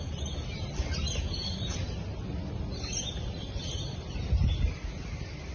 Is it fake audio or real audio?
real